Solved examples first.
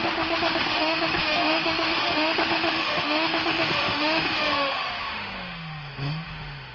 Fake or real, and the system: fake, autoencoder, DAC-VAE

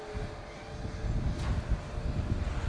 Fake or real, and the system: real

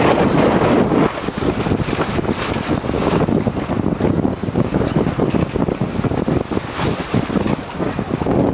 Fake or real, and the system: real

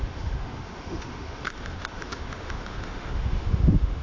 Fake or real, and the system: fake, autoencoder, DAC-VAE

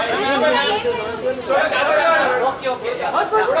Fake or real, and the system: real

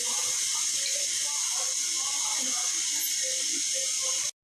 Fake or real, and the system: real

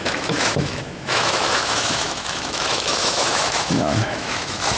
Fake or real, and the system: fake, autoencoder, DAC-VAE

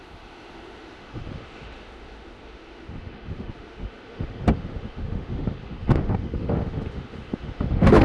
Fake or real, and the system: fake, autoencoder, DAC-VAE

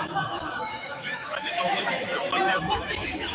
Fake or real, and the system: fake, autoencoder, DAC-VAE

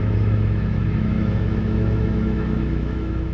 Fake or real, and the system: fake, autoencoder, DAC-VAE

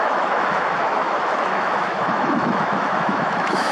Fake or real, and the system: fake, autoencoder, DAC-VAE